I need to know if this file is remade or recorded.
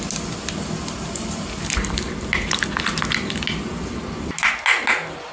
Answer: recorded